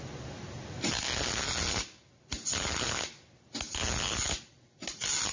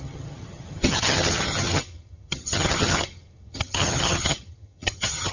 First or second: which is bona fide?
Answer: first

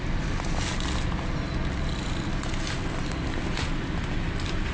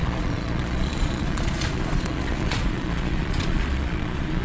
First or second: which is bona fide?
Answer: first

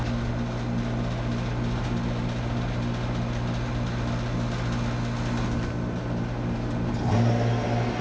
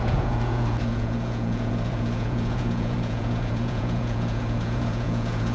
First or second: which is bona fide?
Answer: first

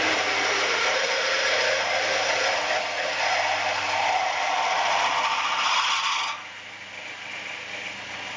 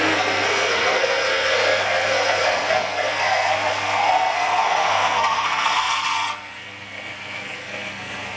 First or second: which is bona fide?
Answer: first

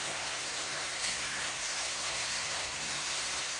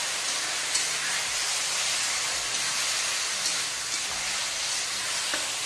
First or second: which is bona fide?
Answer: second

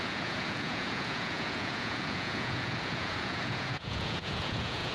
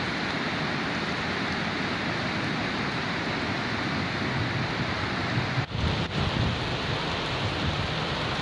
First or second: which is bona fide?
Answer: second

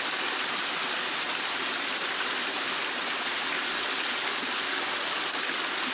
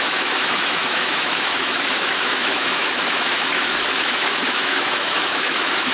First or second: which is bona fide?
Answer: first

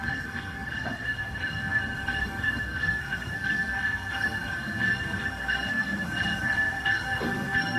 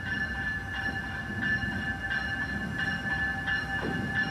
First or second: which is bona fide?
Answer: second